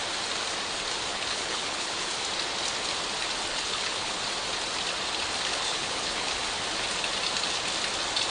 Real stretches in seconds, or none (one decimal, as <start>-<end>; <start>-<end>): 0.0-1.1; 2.1-3.5; 4.2-5.5; 6.4-8.3